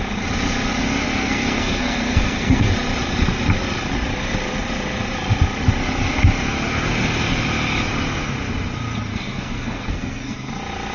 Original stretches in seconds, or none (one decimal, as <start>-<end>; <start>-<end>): 0.0-1.1; 2.7-9.1; 10.5-10.9